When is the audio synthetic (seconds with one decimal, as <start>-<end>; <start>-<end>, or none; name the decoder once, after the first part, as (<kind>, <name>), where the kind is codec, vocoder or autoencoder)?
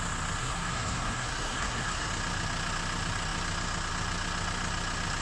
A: 0.4-2.1 (codec, SNAC)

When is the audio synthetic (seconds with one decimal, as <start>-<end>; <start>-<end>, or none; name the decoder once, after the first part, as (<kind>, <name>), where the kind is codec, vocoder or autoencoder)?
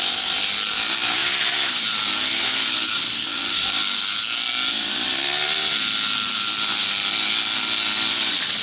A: 3.3-4.2 (codec, DAC)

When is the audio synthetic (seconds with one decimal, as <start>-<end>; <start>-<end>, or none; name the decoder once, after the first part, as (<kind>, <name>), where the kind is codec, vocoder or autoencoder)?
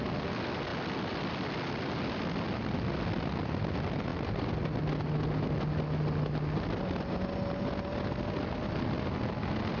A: none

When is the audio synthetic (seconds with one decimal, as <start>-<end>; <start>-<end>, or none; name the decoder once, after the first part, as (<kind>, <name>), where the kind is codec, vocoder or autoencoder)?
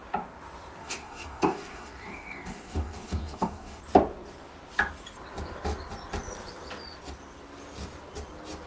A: 0.8-3.8 (codec, DAC)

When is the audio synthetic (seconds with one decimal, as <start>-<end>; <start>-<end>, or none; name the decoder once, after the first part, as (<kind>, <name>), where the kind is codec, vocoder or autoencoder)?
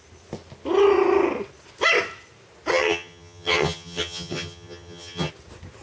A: 2.7-5.3 (vocoder, HiFi-GAN)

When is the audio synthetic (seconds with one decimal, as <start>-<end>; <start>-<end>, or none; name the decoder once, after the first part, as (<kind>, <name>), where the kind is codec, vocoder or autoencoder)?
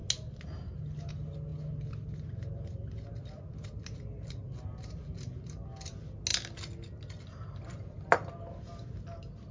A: none